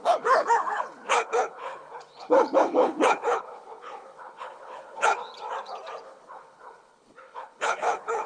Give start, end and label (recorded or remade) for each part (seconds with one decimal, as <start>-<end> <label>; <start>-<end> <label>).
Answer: 0.0-5.2 remade; 5.2-6.0 recorded; 6.0-8.3 remade